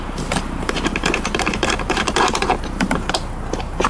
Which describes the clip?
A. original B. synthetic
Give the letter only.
B